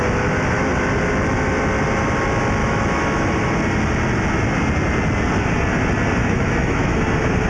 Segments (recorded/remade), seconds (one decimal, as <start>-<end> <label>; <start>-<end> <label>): 0.0-2.6 recorded; 2.6-3.5 remade; 3.5-6.2 recorded; 6.2-7.0 remade; 7.0-7.5 recorded